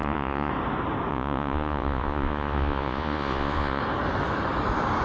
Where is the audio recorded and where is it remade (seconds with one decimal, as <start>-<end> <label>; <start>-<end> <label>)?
0.0-0.5 remade; 0.5-1.1 recorded; 1.1-3.8 remade; 3.8-5.0 recorded